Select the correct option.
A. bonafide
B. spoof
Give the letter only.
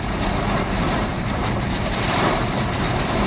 B